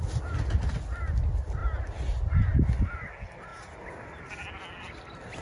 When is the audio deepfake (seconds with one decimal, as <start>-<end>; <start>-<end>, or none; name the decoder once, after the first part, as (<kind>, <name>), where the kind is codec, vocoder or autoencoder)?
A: none